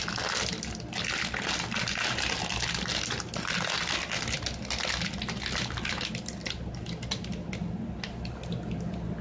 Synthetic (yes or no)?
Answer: no